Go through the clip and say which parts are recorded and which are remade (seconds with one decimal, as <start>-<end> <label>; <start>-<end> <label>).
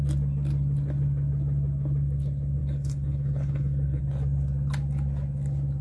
0.0-2.6 recorded; 2.6-4.0 remade; 4.0-5.8 recorded